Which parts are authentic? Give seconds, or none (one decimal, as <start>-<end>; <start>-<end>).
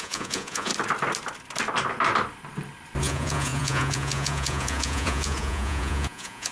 0.7-3.0